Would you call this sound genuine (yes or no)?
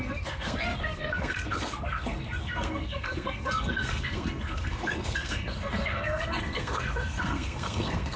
no